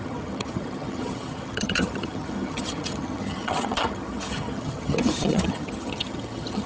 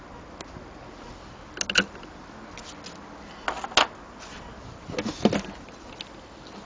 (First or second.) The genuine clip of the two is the second